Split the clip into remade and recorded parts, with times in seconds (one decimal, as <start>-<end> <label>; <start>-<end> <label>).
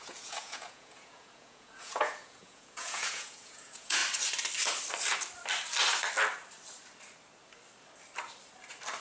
0.0-4.0 remade; 4.0-9.0 recorded